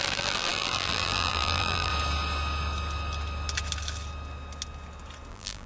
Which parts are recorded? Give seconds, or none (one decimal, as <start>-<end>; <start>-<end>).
1.9-5.3